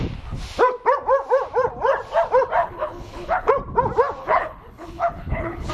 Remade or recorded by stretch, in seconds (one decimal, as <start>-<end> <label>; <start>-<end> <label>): 0.0-2.6 recorded; 2.6-3.5 remade; 3.5-4.2 recorded; 4.2-5.7 remade